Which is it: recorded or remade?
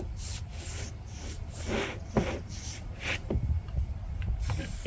remade